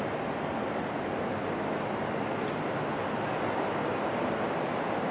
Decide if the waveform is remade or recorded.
recorded